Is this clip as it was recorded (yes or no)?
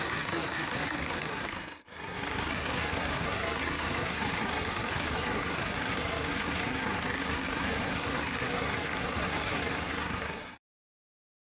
no